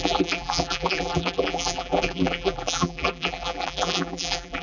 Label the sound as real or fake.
fake